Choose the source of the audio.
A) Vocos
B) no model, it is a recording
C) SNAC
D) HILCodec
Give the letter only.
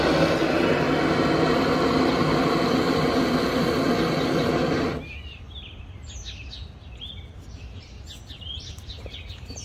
B